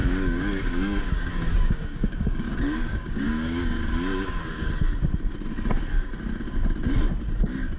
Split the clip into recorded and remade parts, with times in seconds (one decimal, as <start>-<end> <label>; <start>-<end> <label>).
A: 0.0-4.7 remade; 4.7-7.8 recorded